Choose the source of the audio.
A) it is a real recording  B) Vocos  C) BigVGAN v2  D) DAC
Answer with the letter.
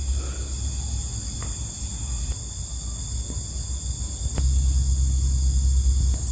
A